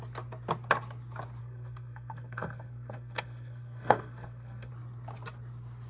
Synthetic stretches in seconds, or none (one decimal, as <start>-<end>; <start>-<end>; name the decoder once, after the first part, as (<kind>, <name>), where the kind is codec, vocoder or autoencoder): 1.4-4.7 (codec, SNAC)